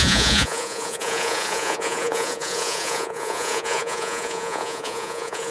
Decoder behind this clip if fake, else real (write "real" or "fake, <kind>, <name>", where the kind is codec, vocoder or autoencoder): fake, vocoder, Vocos